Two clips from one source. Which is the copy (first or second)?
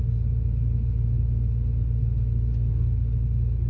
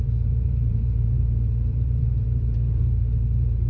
second